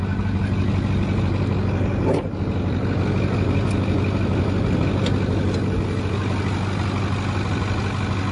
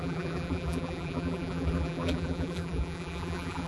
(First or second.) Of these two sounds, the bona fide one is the first